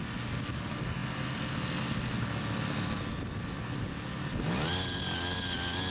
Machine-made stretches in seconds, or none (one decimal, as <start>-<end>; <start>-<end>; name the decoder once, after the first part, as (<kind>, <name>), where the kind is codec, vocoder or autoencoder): none